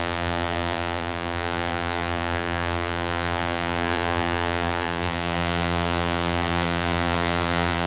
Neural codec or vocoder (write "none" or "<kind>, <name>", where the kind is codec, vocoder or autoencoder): vocoder, BigVGAN v2